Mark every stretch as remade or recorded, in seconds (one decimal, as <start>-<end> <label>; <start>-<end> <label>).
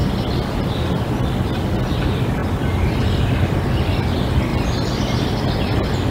0.0-1.1 remade; 1.1-2.4 recorded; 2.4-3.0 remade; 3.0-4.5 recorded; 4.5-5.4 remade; 5.4-6.1 recorded